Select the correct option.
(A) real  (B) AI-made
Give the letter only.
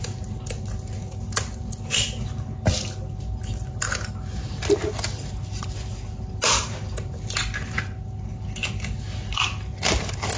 A